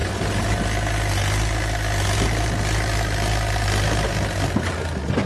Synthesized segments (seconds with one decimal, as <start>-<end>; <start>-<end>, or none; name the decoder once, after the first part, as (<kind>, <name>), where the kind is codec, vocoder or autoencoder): none